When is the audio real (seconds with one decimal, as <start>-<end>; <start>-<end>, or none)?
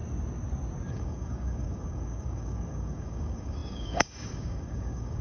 0.0-0.9